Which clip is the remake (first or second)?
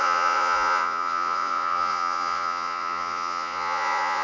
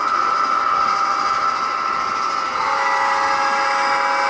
first